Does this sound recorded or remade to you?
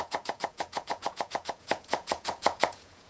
remade